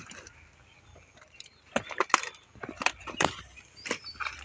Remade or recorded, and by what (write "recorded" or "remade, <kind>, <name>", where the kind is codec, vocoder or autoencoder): remade, vocoder, BigVGAN v2